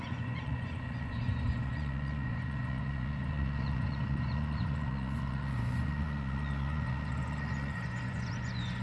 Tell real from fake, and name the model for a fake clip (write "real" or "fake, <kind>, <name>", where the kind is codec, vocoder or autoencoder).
fake, vocoder, Vocos